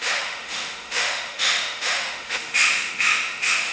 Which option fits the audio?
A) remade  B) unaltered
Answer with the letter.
A